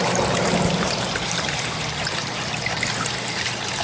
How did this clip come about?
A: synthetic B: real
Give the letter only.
A